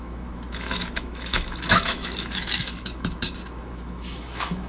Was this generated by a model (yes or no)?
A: yes